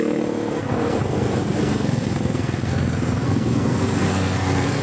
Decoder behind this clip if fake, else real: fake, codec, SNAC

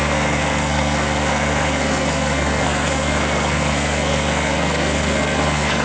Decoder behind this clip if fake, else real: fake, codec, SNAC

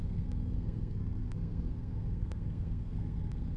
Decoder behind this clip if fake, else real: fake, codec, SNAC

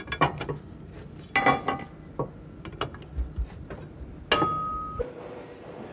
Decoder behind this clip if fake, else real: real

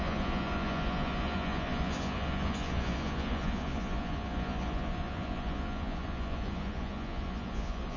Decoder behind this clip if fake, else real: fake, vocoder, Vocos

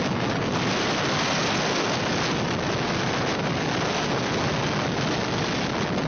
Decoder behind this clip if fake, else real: real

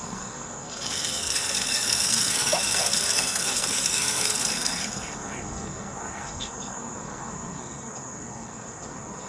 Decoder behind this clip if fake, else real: fake, codec, SNAC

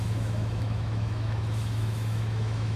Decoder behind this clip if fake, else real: fake, autoencoder, DAC-VAE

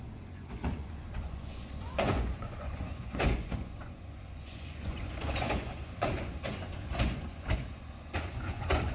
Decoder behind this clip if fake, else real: fake, vocoder, Vocos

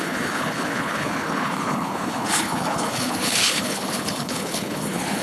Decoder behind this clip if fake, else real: fake, codec, HILCodec